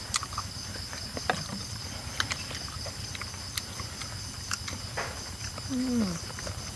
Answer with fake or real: real